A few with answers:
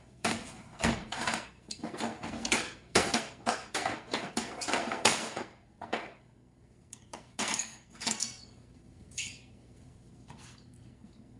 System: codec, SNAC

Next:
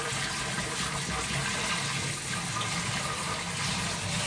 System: none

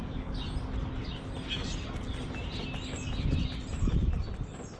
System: none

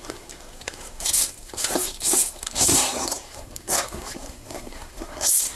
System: codec, SNAC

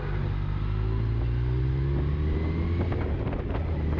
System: none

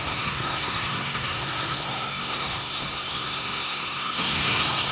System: codec, SNAC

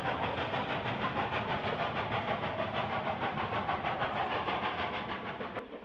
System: none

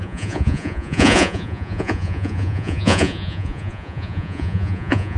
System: vocoder, Vocos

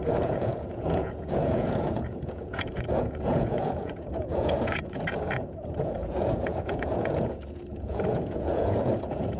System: vocoder, Vocos